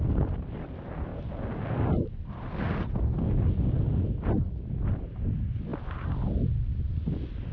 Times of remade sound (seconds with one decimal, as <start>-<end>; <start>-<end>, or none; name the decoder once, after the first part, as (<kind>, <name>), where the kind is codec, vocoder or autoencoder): none